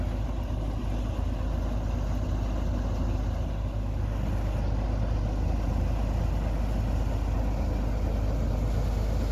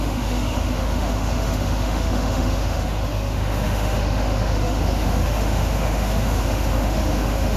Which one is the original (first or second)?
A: first